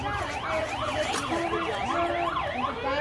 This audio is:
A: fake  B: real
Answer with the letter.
B